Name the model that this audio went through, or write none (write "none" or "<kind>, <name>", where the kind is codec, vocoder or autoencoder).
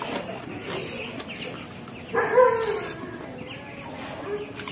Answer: none